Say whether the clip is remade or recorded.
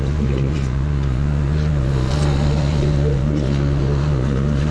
remade